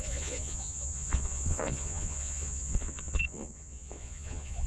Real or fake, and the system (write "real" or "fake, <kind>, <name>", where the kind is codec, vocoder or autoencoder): fake, vocoder, Vocos